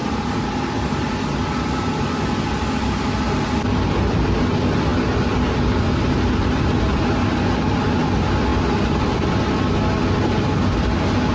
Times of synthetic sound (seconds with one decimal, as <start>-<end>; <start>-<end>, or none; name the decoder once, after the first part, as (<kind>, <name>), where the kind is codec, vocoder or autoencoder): 0.0-2.0 (vocoder, BigVGAN v2); 8.5-9.4